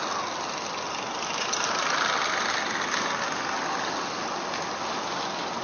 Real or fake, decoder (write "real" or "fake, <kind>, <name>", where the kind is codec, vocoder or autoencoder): real